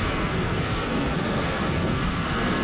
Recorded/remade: remade